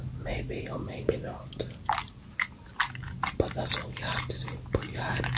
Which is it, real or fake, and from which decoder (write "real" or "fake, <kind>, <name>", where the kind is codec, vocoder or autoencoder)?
real